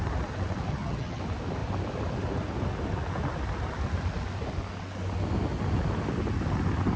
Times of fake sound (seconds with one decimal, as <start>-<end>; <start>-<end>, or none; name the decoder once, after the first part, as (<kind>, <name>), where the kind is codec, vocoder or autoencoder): 0.7-1.2 (vocoder, HiFi-GAN)